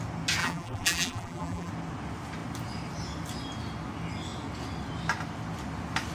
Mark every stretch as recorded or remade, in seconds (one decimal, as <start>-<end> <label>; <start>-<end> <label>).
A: 0.0-0.4 recorded; 0.4-1.7 remade; 1.7-6.1 recorded

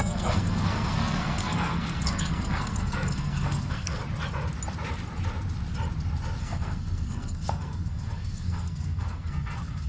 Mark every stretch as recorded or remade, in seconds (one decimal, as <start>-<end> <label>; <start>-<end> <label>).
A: 0.0-4.0 remade; 4.0-6.4 recorded; 6.4-9.9 remade

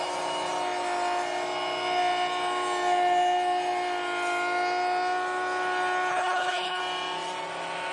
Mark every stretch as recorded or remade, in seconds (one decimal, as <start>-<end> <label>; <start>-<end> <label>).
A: 0.0-6.1 recorded; 6.1-6.8 remade; 6.8-7.9 recorded

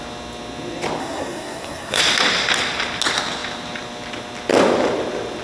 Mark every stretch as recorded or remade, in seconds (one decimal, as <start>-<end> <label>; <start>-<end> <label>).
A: 0.0-1.0 recorded; 1.0-2.0 remade; 2.0-5.4 recorded

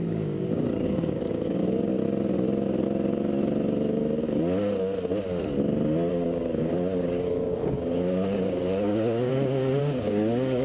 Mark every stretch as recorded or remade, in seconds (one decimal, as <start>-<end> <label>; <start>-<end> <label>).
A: 0.0-1.9 remade; 1.9-6.1 recorded; 6.1-9.3 remade; 9.3-9.8 recorded; 9.8-10.6 remade

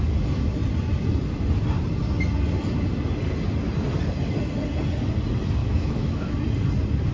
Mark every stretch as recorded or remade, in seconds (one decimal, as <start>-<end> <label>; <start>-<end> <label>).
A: 0.0-5.6 recorded; 5.6-6.3 remade; 6.3-7.1 recorded

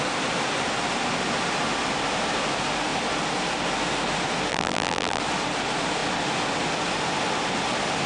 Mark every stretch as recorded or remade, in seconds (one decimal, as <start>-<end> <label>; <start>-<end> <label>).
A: 0.0-4.5 recorded; 4.5-5.2 remade; 5.2-8.1 recorded